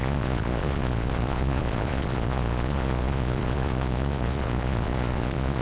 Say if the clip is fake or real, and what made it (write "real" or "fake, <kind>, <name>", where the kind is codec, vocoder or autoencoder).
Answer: fake, vocoder, Vocos